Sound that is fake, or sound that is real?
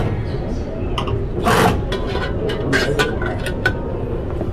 real